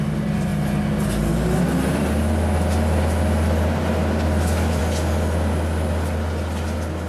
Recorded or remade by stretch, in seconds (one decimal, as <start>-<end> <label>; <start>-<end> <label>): 0.0-7.1 recorded